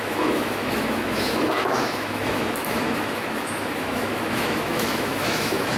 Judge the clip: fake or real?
fake